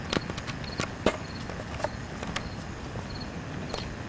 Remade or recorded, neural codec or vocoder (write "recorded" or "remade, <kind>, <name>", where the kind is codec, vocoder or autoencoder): recorded